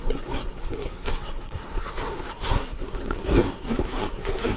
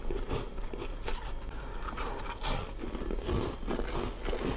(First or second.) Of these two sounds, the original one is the second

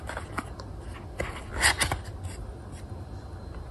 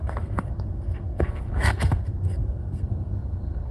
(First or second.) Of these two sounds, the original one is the first